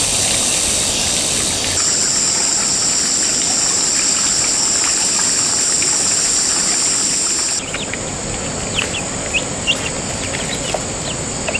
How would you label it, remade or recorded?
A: recorded